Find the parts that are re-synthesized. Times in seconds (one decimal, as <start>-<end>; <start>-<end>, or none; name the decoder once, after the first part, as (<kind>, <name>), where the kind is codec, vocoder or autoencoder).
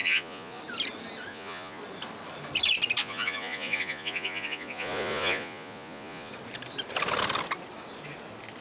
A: 0.0-0.6 (vocoder, Vocos); 1.3-1.8; 3.0-6.3